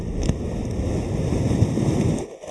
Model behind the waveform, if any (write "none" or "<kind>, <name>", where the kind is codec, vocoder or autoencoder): none